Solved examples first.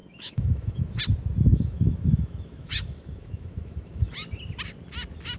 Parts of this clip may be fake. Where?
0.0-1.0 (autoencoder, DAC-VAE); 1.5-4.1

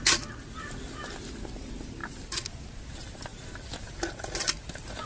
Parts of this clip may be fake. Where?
none

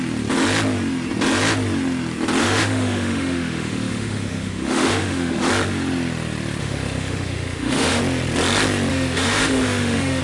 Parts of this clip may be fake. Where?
2.4-5.5 (autoencoder, DAC-VAE); 6.6-8.0; 8.9-10.2

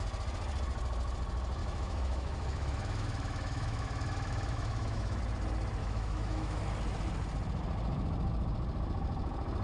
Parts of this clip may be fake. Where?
1.6-5.2 (autoencoder, DAC-VAE); 5.8-6.6